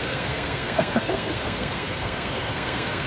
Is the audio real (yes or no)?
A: no